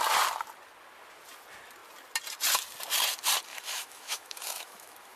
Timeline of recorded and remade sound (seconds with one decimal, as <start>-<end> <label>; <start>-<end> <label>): 0.0-3.5 recorded; 3.5-5.2 remade